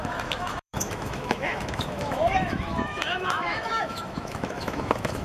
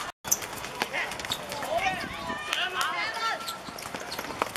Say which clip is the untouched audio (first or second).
second